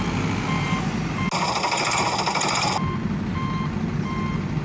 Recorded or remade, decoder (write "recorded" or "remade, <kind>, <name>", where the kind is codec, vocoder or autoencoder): recorded